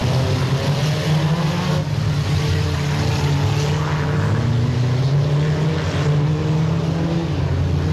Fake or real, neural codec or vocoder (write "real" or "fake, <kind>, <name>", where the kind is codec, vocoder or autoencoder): real